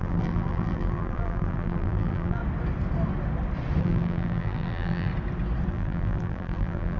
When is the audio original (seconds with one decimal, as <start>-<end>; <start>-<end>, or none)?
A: 2.4-3.8; 5.1-5.7